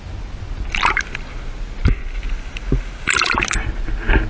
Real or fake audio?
real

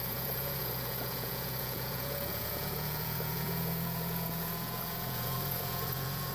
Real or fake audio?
fake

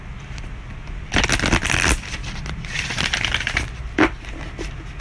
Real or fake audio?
real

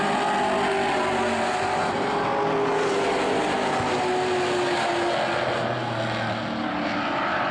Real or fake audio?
real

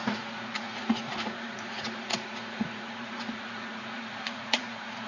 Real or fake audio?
fake